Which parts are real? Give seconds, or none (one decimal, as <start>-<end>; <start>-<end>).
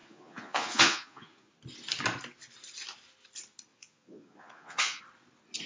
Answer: 1.5-3.7; 5.0-5.7